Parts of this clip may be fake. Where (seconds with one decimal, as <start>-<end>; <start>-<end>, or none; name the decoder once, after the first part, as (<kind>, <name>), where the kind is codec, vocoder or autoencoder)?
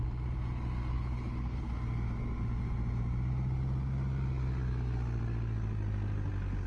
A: 0.9-1.7 (codec, HILCodec)